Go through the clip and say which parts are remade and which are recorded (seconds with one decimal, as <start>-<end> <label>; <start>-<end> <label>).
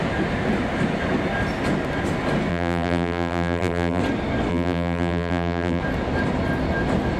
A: 0.0-2.5 recorded; 2.5-4.0 remade; 4.0-4.5 recorded; 4.5-5.8 remade; 5.8-7.2 recorded